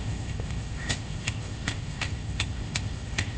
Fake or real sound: fake